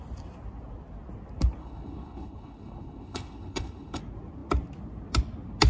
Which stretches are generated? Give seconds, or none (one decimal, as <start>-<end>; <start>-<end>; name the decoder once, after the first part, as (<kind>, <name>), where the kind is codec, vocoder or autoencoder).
1.6-4.0 (codec, HILCodec)